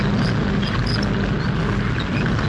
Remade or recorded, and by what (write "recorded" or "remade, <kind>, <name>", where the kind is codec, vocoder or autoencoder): recorded